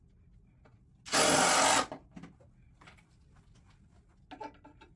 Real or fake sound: real